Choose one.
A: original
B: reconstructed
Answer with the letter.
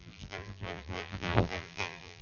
B